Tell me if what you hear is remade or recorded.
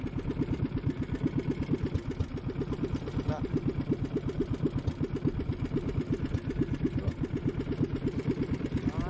recorded